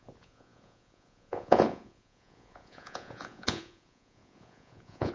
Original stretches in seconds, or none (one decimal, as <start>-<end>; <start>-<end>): none